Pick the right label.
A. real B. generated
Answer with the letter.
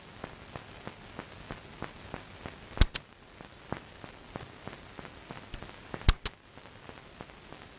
A